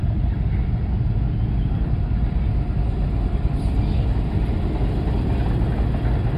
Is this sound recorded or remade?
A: recorded